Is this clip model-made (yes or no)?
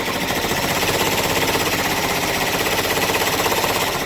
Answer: yes